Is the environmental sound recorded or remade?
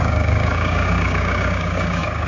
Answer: remade